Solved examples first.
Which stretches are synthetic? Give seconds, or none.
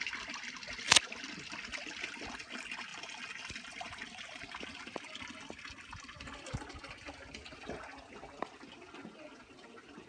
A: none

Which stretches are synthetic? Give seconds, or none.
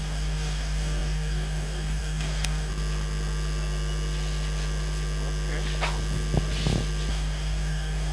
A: 0.0-2.7; 7.1-8.1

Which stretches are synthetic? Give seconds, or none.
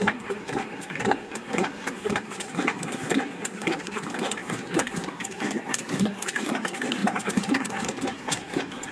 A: 0.0-8.9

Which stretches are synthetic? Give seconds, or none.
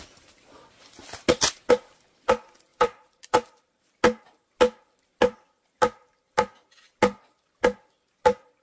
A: 2.7-3.9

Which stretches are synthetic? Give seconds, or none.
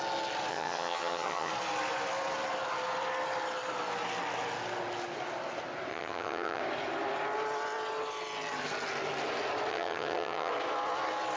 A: 0.5-1.5; 5.9-6.6; 9.7-10.5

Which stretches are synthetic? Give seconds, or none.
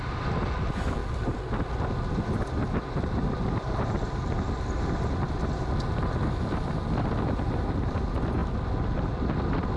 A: none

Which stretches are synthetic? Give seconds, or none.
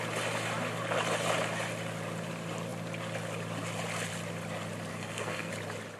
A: 4.9-5.5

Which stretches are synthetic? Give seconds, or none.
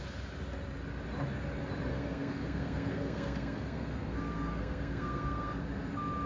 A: 1.9-5.7